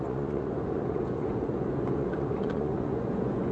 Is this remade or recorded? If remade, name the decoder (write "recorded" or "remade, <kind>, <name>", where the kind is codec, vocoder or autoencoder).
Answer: remade, vocoder, Vocos